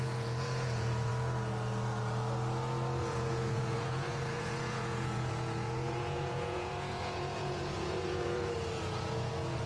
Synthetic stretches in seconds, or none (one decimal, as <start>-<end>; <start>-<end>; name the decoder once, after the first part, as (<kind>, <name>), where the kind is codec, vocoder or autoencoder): 0.0-1.1 (vocoder, Vocos); 3.0-9.7